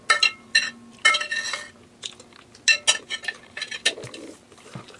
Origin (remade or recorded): recorded